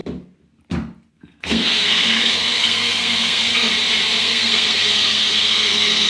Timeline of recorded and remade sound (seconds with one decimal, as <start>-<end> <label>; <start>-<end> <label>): 0.0-1.1 recorded; 1.1-3.7 remade; 3.7-4.2 recorded; 4.2-6.1 remade